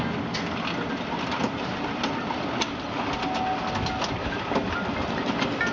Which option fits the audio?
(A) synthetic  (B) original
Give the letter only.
B